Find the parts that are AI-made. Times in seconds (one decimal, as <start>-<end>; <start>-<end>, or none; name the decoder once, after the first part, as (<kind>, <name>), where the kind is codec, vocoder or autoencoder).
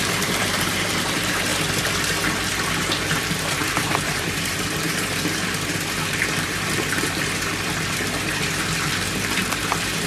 0.0-1.5 (vocoder, BigVGAN v2); 3.1-7.5; 8.5-10.1